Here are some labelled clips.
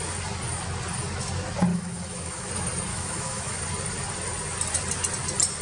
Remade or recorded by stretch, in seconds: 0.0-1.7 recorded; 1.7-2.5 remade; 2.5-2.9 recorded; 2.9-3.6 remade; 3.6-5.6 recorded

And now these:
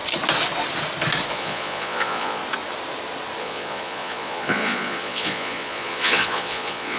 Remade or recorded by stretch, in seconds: 0.0-1.3 recorded; 1.3-2.4 remade; 2.4-3.4 recorded; 3.4-7.0 remade

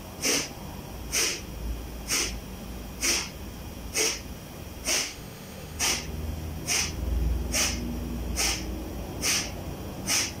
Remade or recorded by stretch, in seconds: 0.0-5.0 recorded; 5.0-5.8 remade; 5.8-10.4 recorded

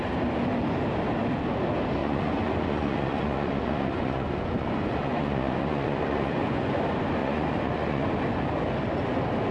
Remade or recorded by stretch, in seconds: 0.0-2.0 recorded; 2.0-6.8 remade; 6.8-7.2 recorded; 7.2-8.1 remade; 8.1-9.5 recorded

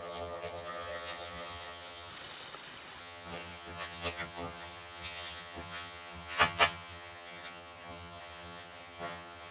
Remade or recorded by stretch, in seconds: 0.0-2.1 remade; 2.1-3.0 recorded; 3.0-9.5 remade

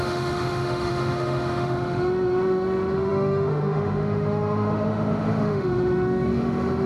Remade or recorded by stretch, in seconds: 0.0-6.9 remade